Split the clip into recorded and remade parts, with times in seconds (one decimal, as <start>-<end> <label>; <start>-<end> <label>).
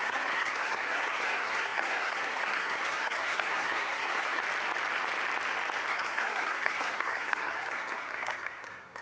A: 0.0-4.4 remade; 4.4-5.9 recorded; 5.9-9.0 remade